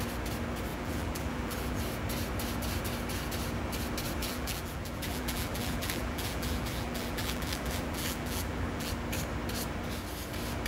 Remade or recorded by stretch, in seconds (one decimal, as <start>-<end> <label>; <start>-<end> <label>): 0.0-0.7 recorded; 0.7-1.8 remade; 1.8-4.2 recorded; 4.2-8.9 remade; 8.9-10.7 recorded